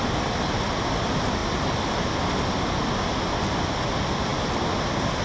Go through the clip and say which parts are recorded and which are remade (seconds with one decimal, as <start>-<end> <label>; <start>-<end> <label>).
0.0-5.2 recorded